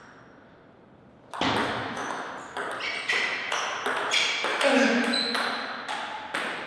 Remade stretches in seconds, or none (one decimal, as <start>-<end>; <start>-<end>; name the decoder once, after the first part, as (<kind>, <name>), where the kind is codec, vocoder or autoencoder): 1.6-2.3 (autoencoder, DAC-VAE); 4.5-5.2